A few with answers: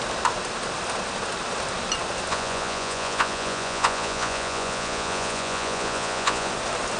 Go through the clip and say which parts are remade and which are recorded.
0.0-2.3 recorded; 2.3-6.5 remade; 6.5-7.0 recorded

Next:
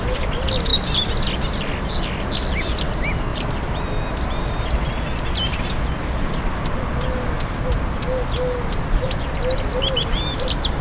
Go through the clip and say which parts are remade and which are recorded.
0.0-10.8 recorded

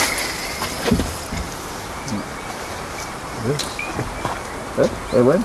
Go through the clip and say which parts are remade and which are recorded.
0.0-5.4 recorded

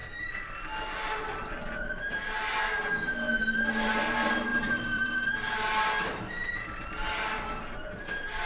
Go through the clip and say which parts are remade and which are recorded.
0.0-4.5 recorded; 4.5-5.3 remade; 5.3-8.5 recorded

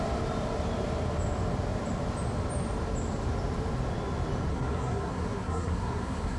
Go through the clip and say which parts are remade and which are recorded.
0.0-4.5 recorded; 4.5-6.4 remade

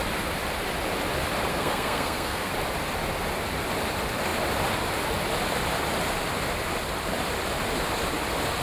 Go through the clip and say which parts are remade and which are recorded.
0.0-1.5 recorded; 1.5-2.5 remade; 2.5-8.6 recorded

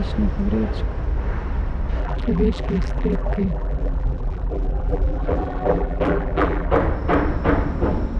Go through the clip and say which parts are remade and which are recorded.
0.0-2.0 recorded; 2.0-6.7 remade; 6.7-8.2 recorded